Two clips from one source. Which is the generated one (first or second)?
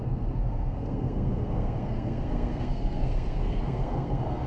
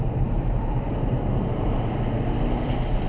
first